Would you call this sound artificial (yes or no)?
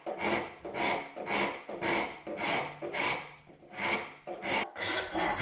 no